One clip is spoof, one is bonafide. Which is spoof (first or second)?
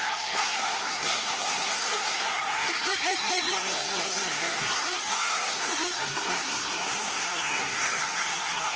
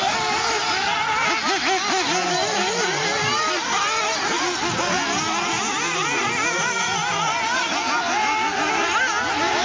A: first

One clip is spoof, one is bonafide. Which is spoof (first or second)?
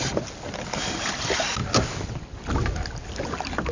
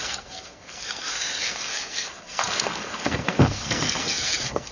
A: second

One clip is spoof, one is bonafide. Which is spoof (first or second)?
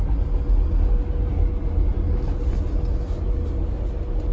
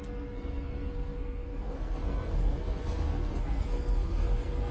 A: second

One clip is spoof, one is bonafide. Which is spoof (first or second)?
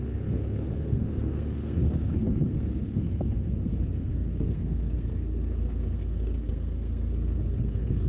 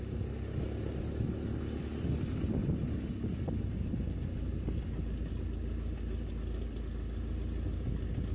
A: first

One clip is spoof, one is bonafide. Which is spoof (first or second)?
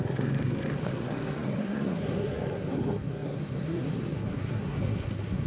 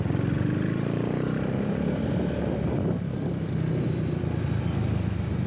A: first